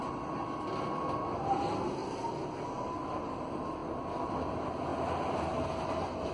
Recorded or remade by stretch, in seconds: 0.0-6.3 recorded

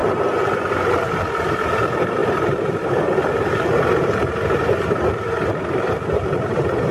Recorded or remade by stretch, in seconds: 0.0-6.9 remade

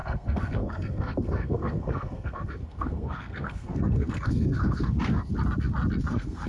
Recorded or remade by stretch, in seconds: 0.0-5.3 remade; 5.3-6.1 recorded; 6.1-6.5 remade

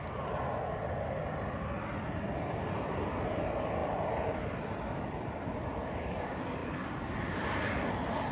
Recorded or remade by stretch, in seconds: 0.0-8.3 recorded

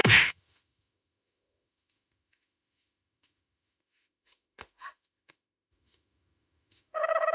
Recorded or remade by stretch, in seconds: 0.0-7.3 remade